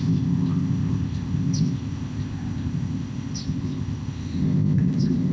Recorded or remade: remade